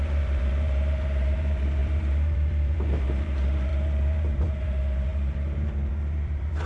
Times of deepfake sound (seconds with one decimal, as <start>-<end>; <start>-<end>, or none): 0.0-6.7